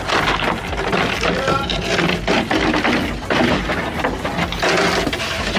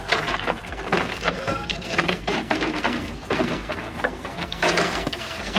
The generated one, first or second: second